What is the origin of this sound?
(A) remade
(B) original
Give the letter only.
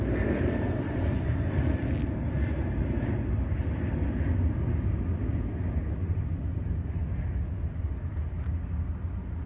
B